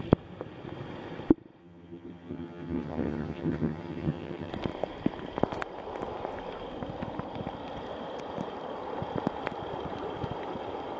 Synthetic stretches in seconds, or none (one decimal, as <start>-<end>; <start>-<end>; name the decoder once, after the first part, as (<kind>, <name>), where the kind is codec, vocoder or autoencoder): 1.6-4.5 (vocoder, HiFi-GAN)